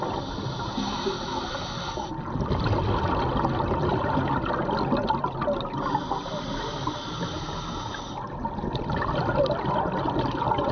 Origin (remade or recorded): recorded